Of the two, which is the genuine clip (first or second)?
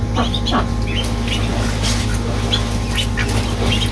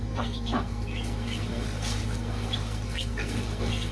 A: first